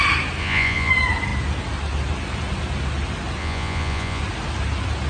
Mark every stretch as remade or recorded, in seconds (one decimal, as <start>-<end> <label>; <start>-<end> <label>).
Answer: 0.0-0.4 recorded; 0.4-0.9 remade; 0.9-3.4 recorded; 3.4-4.2 remade; 4.2-5.1 recorded